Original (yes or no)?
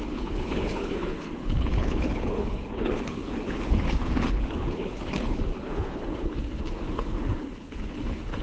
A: no